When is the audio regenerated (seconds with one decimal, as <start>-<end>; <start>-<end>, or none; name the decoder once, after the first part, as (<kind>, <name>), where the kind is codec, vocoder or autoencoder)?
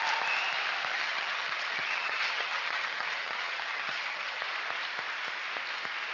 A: 0.9-4.4 (vocoder, HiFi-GAN)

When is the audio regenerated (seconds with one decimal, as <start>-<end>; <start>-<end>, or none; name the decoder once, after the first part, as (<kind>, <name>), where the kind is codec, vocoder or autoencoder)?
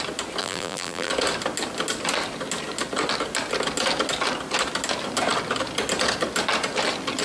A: 0.4-1.1 (vocoder, BigVGAN v2)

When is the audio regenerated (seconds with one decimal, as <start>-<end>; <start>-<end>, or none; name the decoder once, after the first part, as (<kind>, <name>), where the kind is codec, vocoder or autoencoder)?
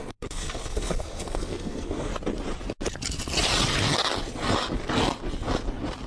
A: 0.0-2.1 (codec, SNAC)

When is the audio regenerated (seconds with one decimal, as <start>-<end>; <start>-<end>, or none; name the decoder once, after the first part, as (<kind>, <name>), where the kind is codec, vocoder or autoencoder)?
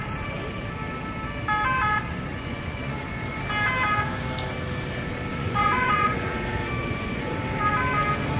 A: 2.3-3.4 (vocoder, Vocos); 5.3-6.3; 6.8-7.4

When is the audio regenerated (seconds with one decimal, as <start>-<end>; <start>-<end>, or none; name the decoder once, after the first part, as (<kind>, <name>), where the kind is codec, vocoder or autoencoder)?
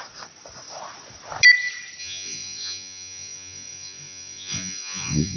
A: 2.0-5.4 (vocoder, Vocos)